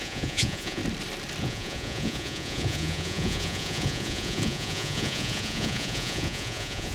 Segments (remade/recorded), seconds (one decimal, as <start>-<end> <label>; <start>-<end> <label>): 0.0-0.8 remade; 0.8-1.4 recorded; 1.4-6.9 remade